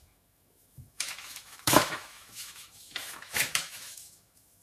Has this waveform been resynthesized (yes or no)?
yes